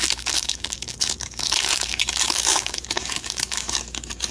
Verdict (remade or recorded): remade